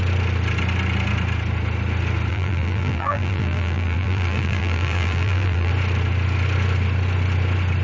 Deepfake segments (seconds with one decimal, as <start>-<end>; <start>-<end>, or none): 2.3-5.7